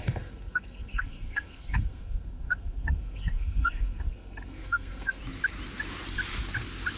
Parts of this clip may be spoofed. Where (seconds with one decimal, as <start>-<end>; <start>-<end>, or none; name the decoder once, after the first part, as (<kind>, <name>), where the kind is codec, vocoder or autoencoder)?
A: 0.0-5.2 (codec, SNAC)